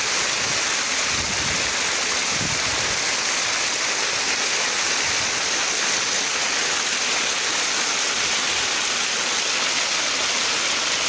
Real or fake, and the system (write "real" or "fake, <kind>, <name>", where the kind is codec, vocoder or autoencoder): real